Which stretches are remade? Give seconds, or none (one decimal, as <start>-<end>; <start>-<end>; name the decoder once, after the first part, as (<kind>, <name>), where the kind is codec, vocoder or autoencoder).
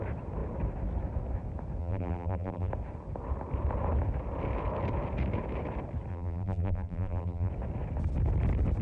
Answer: 1.8-2.7 (vocoder, BigVGAN v2); 6.1-7.5